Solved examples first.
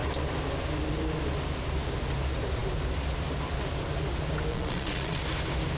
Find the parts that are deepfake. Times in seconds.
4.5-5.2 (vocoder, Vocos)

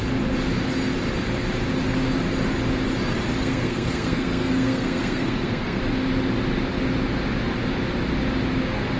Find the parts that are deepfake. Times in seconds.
3.4-5.8 (codec, SNAC)

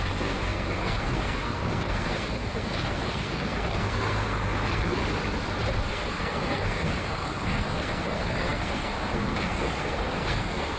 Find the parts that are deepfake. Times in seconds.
0.0-5.0 (codec, SNAC); 5.9-10.8

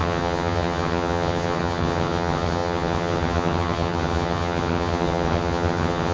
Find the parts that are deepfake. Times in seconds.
0.0-6.1 (vocoder, HiFi-GAN)

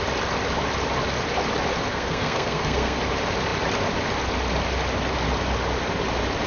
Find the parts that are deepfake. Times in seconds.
1.9-3.0 (codec, SNAC)